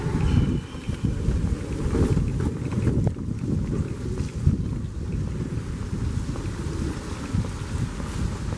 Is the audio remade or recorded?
recorded